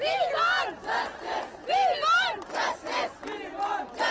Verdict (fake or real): real